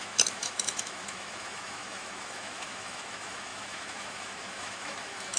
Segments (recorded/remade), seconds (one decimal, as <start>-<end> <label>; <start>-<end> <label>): 0.0-5.4 remade